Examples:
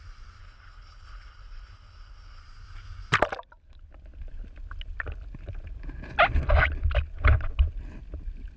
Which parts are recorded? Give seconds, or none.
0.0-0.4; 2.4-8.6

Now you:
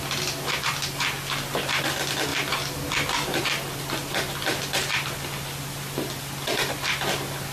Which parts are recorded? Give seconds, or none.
0.0-2.3; 6.7-7.5

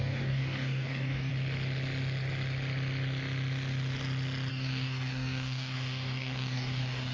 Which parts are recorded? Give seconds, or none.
1.3-4.5

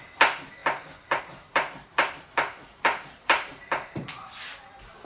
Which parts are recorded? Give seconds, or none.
0.0-2.7; 4.3-5.0

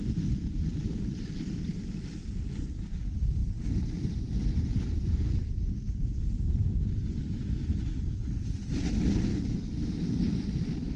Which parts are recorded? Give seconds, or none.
0.0-9.3; 9.8-11.0

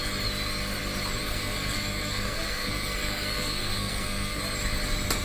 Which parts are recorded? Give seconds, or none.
0.0-1.3; 4.4-5.2

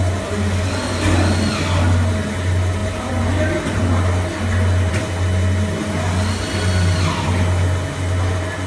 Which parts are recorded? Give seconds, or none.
0.0-8.7